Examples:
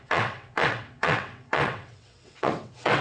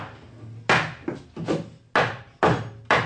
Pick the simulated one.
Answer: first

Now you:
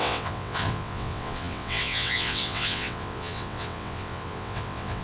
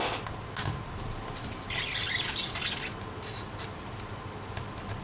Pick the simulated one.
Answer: first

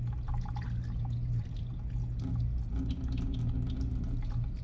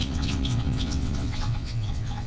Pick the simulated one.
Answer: second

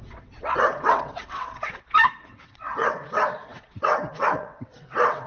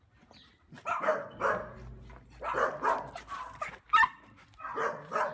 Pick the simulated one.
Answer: first